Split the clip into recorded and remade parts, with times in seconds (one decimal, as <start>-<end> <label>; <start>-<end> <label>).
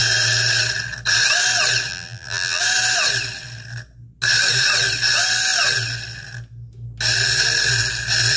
0.0-1.9 recorded; 1.9-2.6 remade; 2.6-8.4 recorded